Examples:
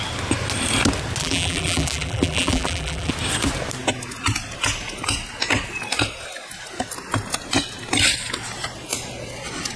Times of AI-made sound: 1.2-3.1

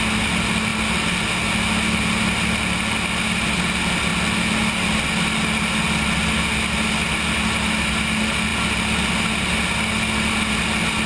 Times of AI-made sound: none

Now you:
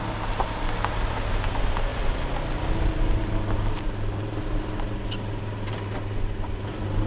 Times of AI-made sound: none

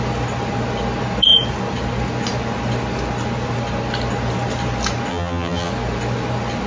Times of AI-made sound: 5.1-5.7

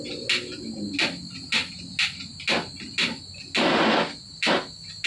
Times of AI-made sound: none

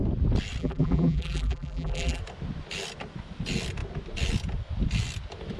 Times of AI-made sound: 0.6-2.2

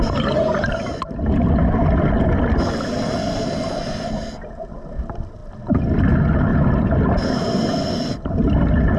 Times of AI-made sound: none